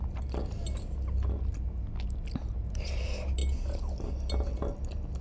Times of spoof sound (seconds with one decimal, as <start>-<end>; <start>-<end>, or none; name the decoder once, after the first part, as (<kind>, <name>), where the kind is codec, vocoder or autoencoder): none